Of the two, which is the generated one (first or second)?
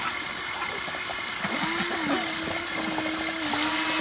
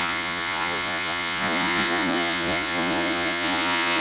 second